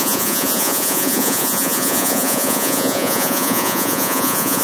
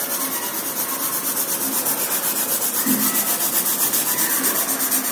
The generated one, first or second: first